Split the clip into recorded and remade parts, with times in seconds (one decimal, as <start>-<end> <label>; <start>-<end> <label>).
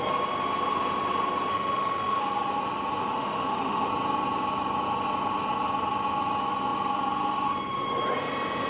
0.0-1.5 recorded; 1.5-2.2 remade; 2.2-3.0 recorded; 3.0-3.9 remade; 3.9-8.7 recorded